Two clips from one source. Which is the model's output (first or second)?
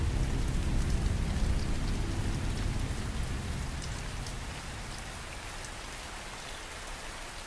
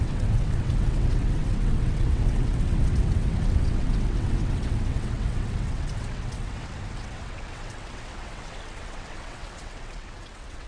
second